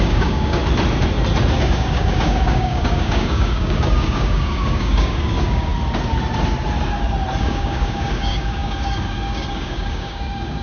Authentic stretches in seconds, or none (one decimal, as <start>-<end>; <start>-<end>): 0.6-1.6; 5.7-7.4